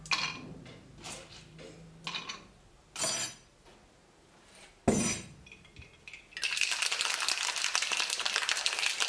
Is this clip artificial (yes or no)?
no